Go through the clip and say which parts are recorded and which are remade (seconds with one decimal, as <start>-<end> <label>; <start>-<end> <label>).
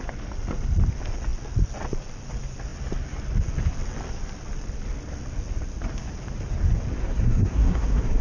0.0-7.0 recorded; 7.0-8.2 remade